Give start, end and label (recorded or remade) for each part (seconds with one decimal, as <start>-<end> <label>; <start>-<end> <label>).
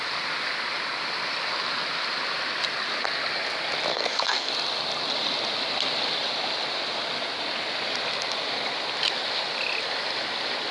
0.0-3.9 recorded; 3.9-4.5 remade; 4.5-10.7 recorded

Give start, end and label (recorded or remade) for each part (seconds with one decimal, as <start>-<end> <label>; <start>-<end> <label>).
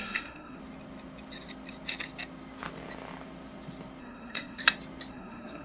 0.0-0.6 remade; 0.6-4.0 recorded; 4.0-4.6 remade; 4.6-5.1 recorded; 5.1-5.6 remade